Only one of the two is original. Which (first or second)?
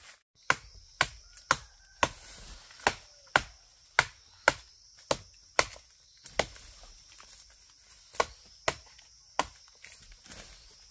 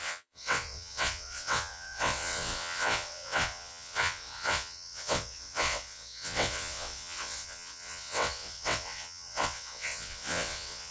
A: first